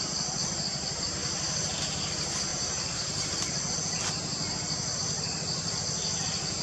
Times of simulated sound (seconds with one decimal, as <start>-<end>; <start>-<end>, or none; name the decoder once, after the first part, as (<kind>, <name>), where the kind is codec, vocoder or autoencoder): 2.5-3.7 (vocoder, BigVGAN v2)